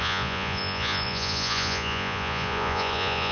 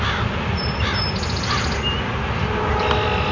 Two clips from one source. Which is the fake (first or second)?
first